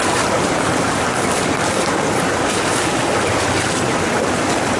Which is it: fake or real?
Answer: real